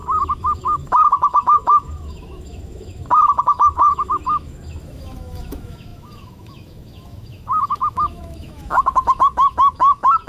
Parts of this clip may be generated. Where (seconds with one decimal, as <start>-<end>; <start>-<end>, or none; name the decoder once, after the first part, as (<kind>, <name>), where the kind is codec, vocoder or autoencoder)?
0.0-10.3 (autoencoder, DAC-VAE)